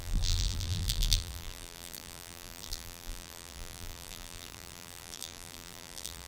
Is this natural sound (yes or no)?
no